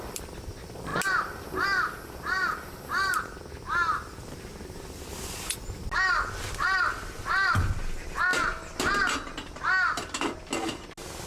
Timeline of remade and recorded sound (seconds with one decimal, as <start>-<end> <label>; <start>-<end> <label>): 0.0-11.3 recorded